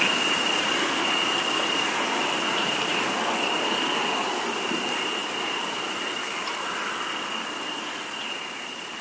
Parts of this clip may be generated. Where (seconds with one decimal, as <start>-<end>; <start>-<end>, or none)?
none